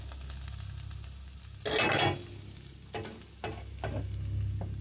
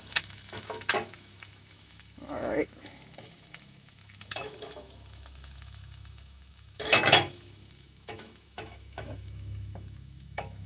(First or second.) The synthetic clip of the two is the second